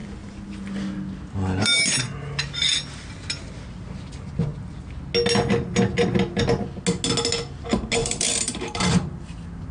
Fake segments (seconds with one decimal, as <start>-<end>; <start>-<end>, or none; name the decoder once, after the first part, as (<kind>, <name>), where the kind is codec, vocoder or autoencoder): 8.0-9.7 (vocoder, BigVGAN v2)

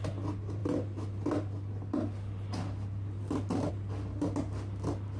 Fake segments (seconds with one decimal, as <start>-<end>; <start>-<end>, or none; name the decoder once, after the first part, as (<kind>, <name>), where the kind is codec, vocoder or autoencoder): none

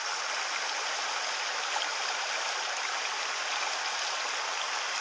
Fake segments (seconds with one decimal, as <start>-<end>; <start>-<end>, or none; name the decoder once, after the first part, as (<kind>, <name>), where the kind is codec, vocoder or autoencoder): none

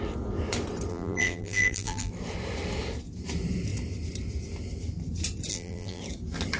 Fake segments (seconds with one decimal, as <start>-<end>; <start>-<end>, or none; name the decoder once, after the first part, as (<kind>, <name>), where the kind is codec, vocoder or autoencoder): 0.9-2.1 (vocoder, BigVGAN v2); 5.5-6.0